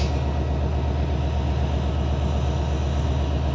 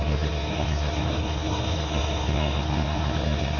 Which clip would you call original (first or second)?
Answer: first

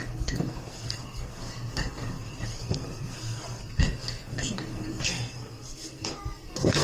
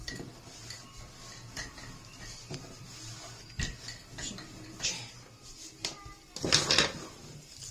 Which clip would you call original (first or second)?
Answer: second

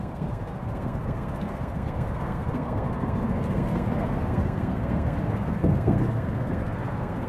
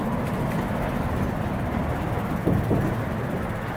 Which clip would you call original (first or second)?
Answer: second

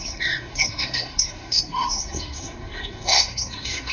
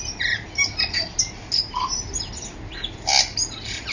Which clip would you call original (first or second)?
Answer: second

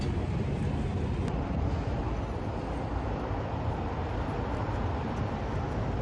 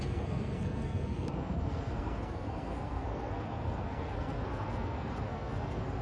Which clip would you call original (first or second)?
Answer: first